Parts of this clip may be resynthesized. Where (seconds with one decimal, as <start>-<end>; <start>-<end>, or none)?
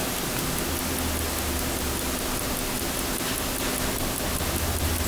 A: none